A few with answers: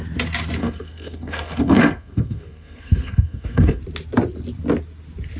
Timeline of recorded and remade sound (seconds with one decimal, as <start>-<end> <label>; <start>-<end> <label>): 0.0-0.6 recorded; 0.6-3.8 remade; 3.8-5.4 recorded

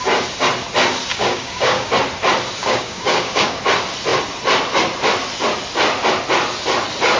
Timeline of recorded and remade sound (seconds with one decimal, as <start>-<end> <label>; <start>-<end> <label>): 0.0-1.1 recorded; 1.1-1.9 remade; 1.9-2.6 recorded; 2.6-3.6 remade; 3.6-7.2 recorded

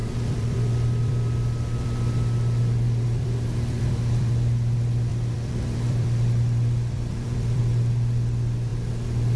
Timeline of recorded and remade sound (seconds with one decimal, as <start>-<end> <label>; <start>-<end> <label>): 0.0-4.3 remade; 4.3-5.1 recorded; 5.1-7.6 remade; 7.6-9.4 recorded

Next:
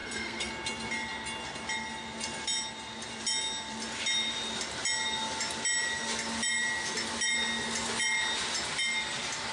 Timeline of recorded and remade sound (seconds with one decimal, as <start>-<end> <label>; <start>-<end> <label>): 0.0-0.5 remade; 0.5-9.5 recorded

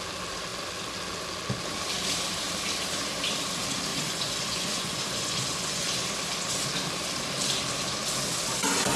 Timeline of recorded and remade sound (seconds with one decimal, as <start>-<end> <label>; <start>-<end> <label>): 0.0-3.9 recorded; 3.9-5.9 remade; 5.9-9.0 recorded